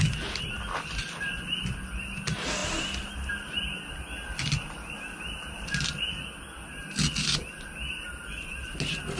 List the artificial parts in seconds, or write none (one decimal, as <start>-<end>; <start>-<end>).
none